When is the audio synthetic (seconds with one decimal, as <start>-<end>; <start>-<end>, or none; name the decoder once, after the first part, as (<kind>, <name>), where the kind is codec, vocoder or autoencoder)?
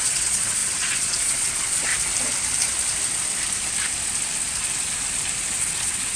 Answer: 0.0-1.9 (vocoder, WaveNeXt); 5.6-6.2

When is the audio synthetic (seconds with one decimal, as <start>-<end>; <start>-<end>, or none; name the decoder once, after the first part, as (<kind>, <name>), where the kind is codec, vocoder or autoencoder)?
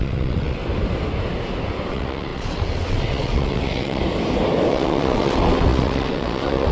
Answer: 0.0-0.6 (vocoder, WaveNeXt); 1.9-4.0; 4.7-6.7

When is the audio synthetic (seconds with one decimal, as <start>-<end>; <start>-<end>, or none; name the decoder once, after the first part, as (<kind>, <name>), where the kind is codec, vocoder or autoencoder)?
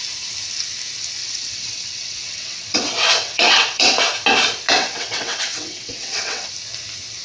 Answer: 1.2-4.0 (vocoder, WaveNeXt); 4.8-6.5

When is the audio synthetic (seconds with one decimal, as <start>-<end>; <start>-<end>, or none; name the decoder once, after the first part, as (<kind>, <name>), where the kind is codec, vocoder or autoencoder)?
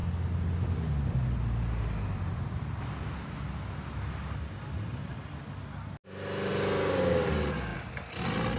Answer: none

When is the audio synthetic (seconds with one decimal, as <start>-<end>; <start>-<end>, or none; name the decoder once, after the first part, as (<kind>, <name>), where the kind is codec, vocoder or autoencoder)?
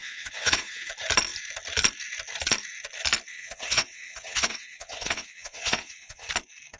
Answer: 0.0-0.9 (vocoder, WaveNeXt); 3.3-6.3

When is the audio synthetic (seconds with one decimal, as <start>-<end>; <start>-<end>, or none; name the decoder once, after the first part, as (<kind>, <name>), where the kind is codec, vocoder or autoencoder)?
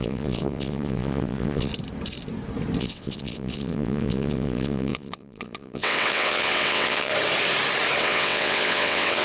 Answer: 0.0-1.7 (vocoder, WaveNeXt); 2.8-7.1; 8.0-9.2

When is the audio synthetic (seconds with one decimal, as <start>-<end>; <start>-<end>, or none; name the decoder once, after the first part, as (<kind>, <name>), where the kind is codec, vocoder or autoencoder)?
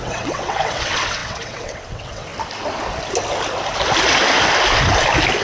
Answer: 0.0-2.3 (vocoder, WaveNeXt)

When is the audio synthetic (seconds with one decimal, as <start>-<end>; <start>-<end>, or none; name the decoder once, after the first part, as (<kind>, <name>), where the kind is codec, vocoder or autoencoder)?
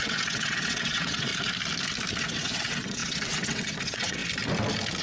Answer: 0.0-1.3 (vocoder, WaveNeXt); 2.2-4.2